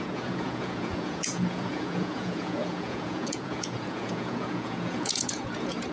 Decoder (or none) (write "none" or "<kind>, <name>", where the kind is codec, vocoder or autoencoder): vocoder, Vocos